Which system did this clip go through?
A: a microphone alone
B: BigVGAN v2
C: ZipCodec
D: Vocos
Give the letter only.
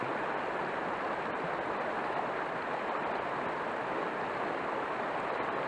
A